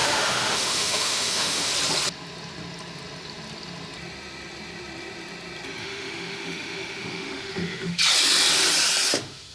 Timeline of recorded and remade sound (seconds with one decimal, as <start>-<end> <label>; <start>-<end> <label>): 0.0-1.7 remade; 1.7-5.8 recorded; 5.8-8.0 remade; 8.0-9.1 recorded; 9.1-9.5 remade